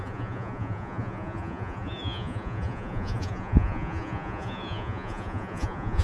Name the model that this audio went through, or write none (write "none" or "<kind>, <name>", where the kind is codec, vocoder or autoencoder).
vocoder, Vocos